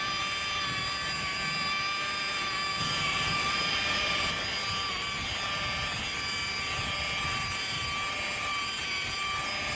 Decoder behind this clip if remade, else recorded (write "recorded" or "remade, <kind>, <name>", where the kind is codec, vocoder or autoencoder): recorded